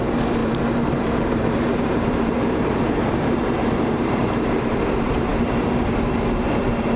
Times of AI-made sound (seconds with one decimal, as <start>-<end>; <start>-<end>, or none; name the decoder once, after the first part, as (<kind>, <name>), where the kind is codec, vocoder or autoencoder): 0.0-7.0 (vocoder, BigVGAN v2)